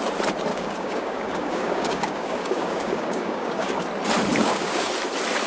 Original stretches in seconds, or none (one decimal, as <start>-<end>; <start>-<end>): 0.0-0.5; 3.8-4.4; 4.9-5.5